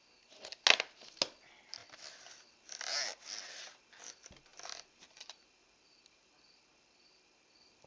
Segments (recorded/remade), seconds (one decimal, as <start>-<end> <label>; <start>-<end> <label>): 0.0-7.9 recorded